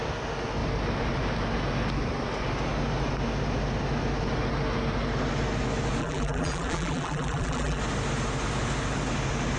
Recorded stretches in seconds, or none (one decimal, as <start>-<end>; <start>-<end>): 0.0-6.0; 7.8-9.6